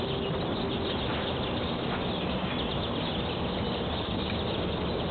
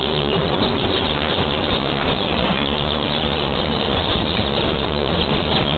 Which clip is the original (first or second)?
first